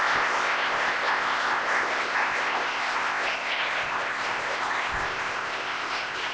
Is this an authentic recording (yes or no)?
no